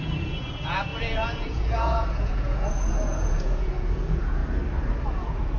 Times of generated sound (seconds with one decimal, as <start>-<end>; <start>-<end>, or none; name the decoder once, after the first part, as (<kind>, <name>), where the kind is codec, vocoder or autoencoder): 0.0-4.4 (vocoder, Vocos); 5.1-5.6